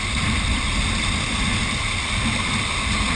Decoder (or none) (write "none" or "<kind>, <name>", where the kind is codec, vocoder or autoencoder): none